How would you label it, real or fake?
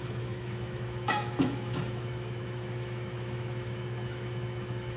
fake